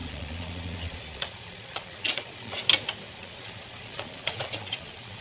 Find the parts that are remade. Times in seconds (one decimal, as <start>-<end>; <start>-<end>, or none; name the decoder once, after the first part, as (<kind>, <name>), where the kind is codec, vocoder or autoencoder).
0.0-2.6 (vocoder, Vocos); 3.1-5.2